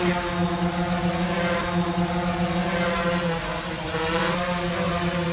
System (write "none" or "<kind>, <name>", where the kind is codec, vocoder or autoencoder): none